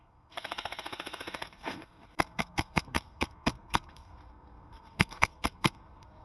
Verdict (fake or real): fake